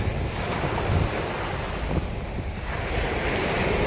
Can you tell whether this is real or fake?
real